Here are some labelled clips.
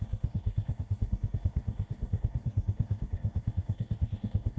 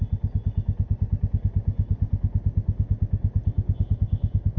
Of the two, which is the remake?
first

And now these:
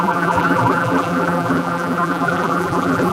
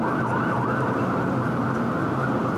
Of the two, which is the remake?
first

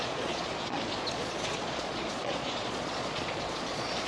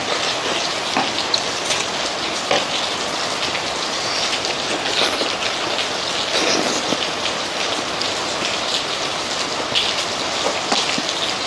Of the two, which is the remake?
first